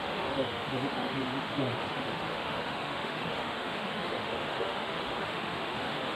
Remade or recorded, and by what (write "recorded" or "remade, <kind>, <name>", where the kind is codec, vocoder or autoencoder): remade, autoencoder, DAC-VAE